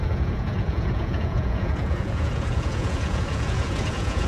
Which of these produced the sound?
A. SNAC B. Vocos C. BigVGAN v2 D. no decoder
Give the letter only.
B